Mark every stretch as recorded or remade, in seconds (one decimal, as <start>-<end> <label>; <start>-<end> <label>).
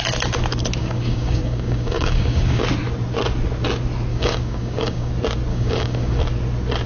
0.0-0.8 recorded; 0.8-2.6 remade; 2.6-4.1 recorded; 4.1-5.1 remade; 5.1-5.5 recorded; 5.5-6.2 remade; 6.2-6.9 recorded